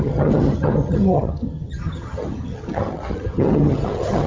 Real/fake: fake